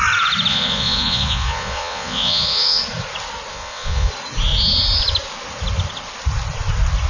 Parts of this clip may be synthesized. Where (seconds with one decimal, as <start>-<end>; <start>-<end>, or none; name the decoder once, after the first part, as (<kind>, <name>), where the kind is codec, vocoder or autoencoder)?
0.5-2.8 (vocoder, Vocos); 3.5-4.1